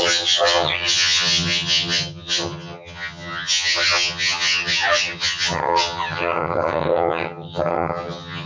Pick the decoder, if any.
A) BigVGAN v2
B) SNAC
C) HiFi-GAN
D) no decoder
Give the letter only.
C